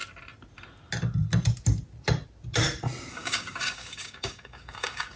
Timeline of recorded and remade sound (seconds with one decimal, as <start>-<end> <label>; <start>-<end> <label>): 0.0-3.1 recorded; 3.1-5.2 remade